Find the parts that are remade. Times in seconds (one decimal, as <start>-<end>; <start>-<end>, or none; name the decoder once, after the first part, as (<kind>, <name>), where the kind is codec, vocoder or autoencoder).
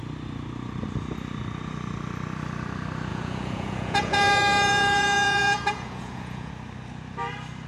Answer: 3.1-6.5 (vocoder, Vocos)